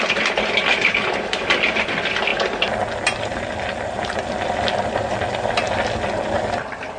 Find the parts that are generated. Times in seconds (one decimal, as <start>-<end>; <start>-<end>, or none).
none